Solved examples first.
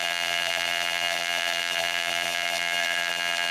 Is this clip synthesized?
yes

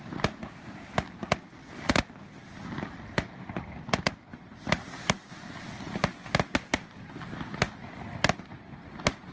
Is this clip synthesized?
no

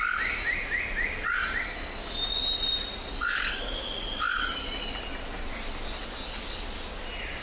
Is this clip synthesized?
no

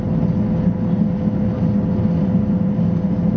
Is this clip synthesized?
no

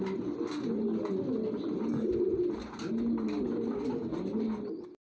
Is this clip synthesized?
no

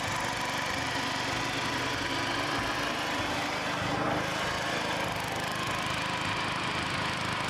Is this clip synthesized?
no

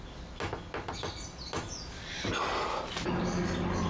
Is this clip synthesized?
no